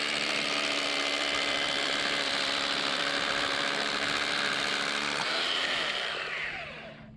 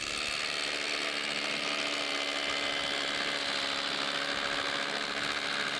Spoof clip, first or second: first